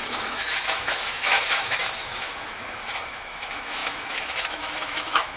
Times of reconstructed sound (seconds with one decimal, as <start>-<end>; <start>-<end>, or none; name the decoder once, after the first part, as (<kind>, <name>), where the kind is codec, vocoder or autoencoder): 0.0-5.4 (autoencoder, DAC-VAE)